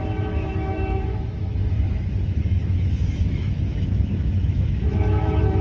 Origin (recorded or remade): remade